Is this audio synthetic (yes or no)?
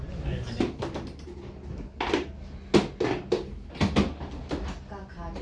no